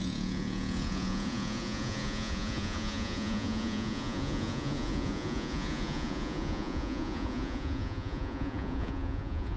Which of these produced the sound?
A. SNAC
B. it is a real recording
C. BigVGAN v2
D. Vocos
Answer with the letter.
D